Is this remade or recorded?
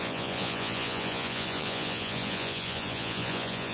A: remade